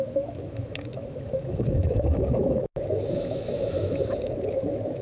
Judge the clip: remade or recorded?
remade